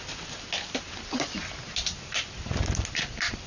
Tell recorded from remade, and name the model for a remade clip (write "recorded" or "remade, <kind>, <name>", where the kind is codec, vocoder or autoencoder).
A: recorded